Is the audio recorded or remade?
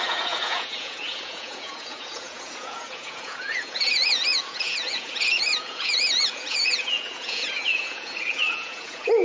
remade